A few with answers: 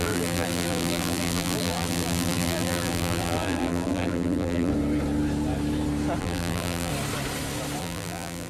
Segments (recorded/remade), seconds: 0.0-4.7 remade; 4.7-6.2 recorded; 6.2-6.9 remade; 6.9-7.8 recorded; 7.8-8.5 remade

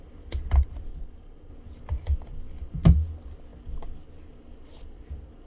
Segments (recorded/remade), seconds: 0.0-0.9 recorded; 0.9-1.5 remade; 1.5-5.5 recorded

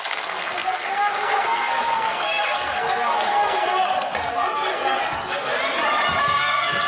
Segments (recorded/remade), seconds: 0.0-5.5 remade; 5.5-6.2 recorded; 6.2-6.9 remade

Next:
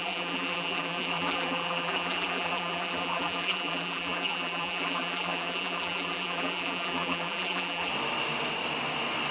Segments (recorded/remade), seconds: 0.0-7.9 remade; 7.9-9.3 recorded